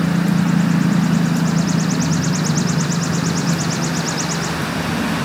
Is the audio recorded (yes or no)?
yes